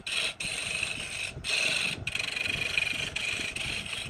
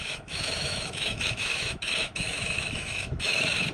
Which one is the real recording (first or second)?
first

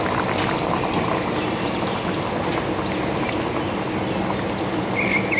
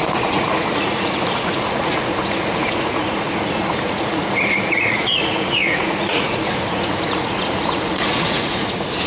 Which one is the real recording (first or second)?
first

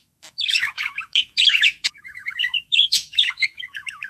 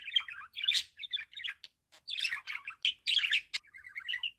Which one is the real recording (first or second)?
second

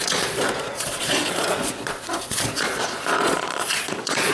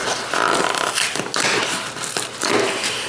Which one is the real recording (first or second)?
second